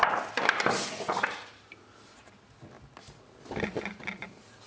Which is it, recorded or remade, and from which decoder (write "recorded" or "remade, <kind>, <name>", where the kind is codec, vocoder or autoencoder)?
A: recorded